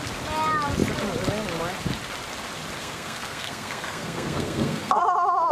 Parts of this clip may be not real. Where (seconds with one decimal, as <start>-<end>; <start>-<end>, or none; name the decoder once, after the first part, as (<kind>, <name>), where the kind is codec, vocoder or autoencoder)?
2.8-5.0 (codec, SNAC)